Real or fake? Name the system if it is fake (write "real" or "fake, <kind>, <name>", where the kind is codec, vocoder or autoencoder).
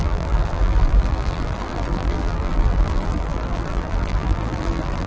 fake, vocoder, BigVGAN v2